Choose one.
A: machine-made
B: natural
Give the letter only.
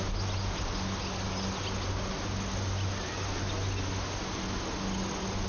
B